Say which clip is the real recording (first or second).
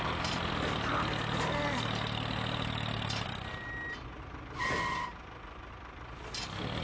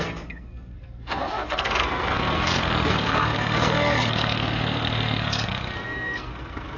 first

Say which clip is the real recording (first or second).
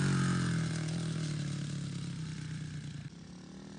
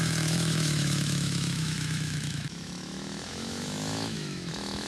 first